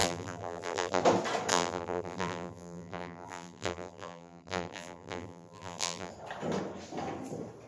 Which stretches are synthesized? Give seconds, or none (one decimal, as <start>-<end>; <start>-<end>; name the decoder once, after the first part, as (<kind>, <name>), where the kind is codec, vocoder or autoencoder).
0.0-1.0 (vocoder, BigVGAN v2); 1.5-6.1